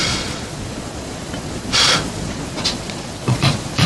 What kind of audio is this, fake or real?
fake